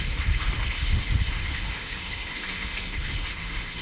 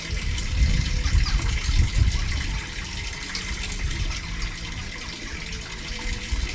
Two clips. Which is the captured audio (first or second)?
second